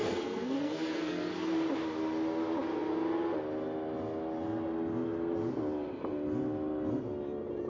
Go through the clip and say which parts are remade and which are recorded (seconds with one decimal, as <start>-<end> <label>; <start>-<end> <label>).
0.0-1.3 remade; 1.3-7.7 recorded